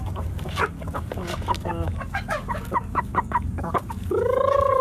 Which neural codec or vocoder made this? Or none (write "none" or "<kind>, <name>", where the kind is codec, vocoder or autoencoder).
codec, DAC